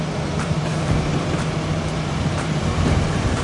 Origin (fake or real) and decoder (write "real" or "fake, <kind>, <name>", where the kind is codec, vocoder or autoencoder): fake, vocoder, BigVGAN v2